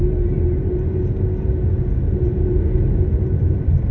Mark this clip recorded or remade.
recorded